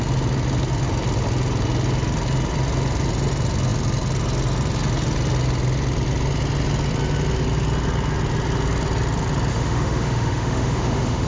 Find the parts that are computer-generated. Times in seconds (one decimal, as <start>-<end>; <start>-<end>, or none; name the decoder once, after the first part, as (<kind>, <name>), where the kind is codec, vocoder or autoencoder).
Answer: 9.5-11.3 (autoencoder, DAC-VAE)